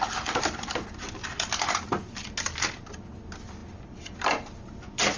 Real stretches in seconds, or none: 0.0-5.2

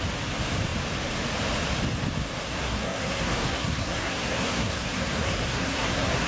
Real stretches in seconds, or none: 0.0-2.4

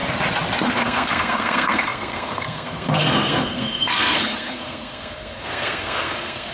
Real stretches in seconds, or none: 0.0-0.7

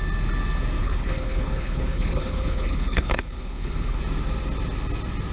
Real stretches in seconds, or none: 0.0-0.8; 4.0-5.3

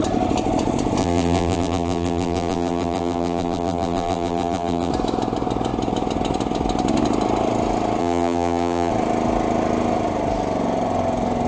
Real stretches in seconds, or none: 0.0-1.0; 4.9-8.0; 8.9-11.5

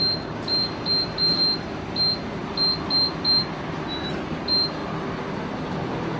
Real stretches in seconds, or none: 0.0-6.2

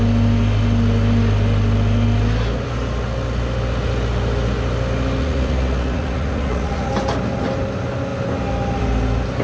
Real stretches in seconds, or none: 0.0-5.2; 6.9-9.4